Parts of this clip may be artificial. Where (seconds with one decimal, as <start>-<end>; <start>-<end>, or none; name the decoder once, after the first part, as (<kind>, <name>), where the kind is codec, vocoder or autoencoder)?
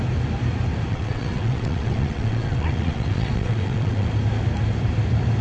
0.9-4.1 (vocoder, WaveNeXt)